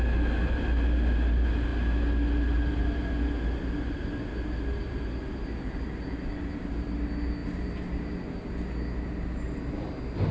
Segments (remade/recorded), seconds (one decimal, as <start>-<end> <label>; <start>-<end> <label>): 0.0-10.3 recorded